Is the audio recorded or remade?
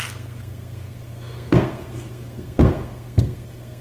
remade